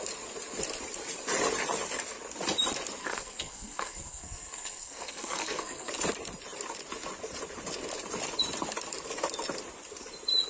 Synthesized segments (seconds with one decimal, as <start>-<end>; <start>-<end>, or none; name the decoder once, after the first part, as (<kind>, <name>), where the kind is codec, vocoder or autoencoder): 3.0-5.9 (codec, SNAC)